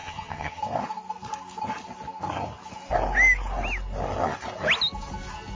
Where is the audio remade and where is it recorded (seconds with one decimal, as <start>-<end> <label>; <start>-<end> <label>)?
0.0-0.6 remade; 0.6-5.5 recorded